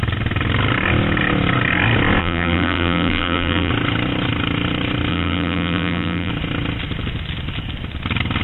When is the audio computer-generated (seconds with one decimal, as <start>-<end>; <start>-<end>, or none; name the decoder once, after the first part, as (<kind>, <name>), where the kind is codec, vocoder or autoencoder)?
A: 2.2-3.7 (vocoder, BigVGAN v2); 5.1-6.3